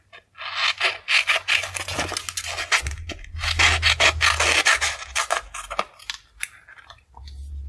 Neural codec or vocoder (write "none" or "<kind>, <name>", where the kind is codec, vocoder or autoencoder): none